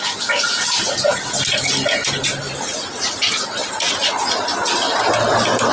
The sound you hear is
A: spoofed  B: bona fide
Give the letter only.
B